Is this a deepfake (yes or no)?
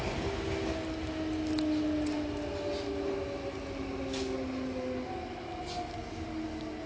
no